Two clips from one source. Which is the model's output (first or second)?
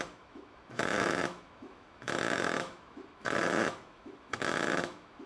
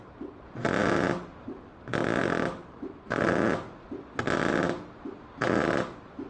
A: first